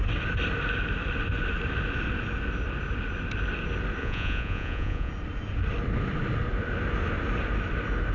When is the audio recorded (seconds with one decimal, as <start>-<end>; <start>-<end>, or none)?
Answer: 0.0-4.0; 5.1-8.1